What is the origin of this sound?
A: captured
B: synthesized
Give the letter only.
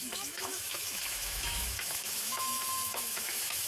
B